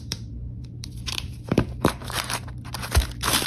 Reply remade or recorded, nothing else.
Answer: remade